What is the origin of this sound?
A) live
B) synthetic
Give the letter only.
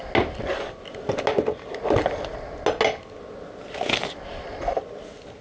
A